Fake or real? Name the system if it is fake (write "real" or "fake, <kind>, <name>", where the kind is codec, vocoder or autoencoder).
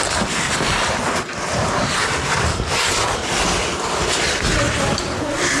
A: real